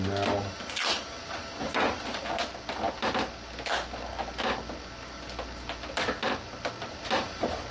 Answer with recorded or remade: recorded